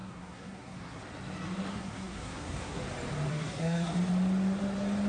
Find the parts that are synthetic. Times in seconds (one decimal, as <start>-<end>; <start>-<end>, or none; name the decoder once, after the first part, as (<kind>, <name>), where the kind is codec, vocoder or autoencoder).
0.0-1.0 (codec, SNAC); 1.7-2.8; 3.3-3.9